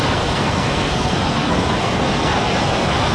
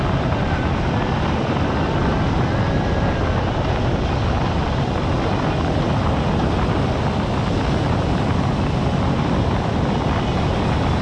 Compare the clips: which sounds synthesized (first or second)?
first